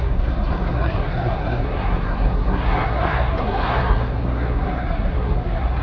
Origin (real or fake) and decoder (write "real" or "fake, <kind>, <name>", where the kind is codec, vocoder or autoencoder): fake, codec, SNAC